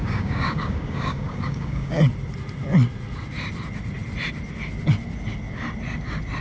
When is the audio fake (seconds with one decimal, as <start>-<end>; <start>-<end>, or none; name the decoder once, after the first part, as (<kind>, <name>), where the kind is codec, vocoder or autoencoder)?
0.0-2.0 (codec, DAC)